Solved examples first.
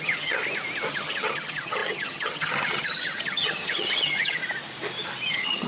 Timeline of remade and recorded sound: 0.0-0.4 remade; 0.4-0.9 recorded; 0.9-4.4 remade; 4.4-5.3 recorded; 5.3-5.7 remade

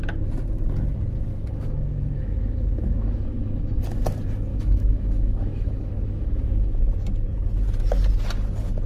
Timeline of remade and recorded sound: 0.0-1.3 recorded; 1.3-3.8 remade; 3.8-4.5 recorded; 4.5-6.8 remade; 6.8-8.9 recorded

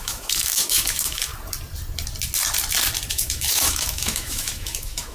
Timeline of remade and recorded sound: 0.0-1.3 remade; 1.3-3.1 recorded; 3.1-5.1 remade

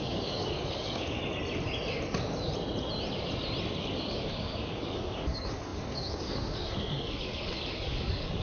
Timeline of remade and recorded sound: 0.0-1.2 remade; 1.2-3.8 recorded; 3.8-8.4 remade

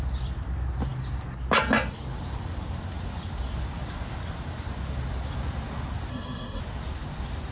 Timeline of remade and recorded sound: 0.0-6.1 recorded; 6.1-6.6 remade; 6.6-7.5 recorded

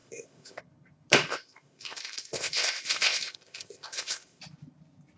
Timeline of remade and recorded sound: 0.0-0.6 remade; 0.6-1.3 recorded; 1.3-4.4 remade; 4.4-5.2 recorded

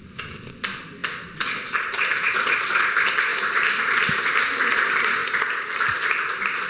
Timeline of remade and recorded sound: 0.0-1.0 recorded; 1.0-2.7 remade; 2.7-3.3 recorded; 3.3-4.8 remade; 4.8-5.2 recorded; 5.2-6.7 remade